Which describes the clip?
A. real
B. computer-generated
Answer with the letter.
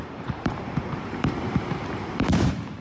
B